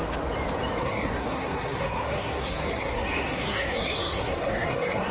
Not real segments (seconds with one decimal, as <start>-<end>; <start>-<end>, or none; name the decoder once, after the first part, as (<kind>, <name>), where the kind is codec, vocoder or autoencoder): 0.8-5.1 (codec, SNAC)